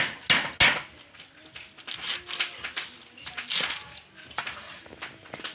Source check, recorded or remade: recorded